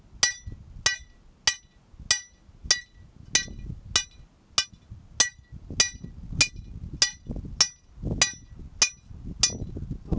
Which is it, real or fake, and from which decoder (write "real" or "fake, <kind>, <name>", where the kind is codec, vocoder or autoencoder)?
real